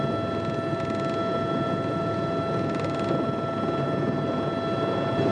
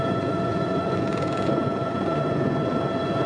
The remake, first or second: second